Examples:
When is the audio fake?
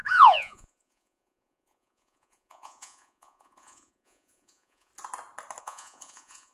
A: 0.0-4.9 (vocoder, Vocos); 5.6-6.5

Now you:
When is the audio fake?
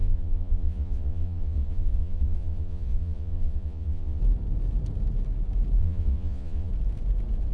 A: 0.0-4.2 (vocoder, Vocos); 5.8-6.7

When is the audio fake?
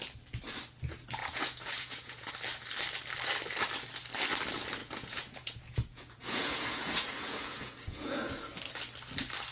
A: 1.2-2.3 (vocoder, Vocos); 4.8-8.6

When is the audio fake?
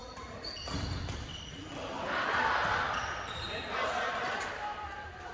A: 0.0-0.5 (vocoder, Vocos)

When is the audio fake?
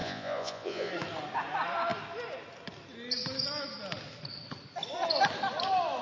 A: 0.0-0.9 (vocoder, Vocos)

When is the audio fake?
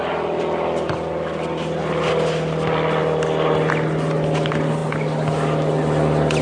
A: none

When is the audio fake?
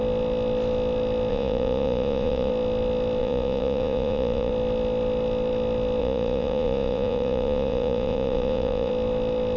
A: 1.3-2.5 (vocoder, Vocos); 3.2-4.5; 6.0-8.9